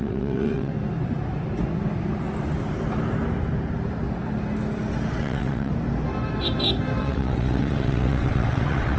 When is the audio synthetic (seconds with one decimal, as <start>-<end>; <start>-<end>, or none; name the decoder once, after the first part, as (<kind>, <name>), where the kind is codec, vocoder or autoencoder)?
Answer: 0.0-0.7 (vocoder, WaveNeXt); 5.2-5.7; 7.0-9.0